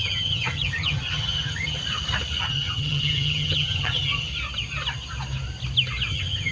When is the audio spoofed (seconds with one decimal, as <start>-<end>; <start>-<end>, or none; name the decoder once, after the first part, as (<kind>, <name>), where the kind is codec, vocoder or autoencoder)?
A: 0.0-1.8 (vocoder, HiFi-GAN); 2.4-4.3; 6.1-6.5